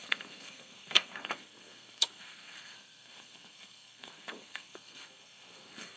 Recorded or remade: remade